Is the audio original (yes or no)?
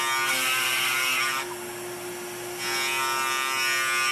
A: yes